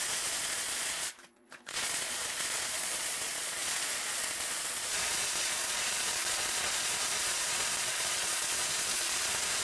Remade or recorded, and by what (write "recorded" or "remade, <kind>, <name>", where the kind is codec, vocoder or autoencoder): remade, vocoder, Vocos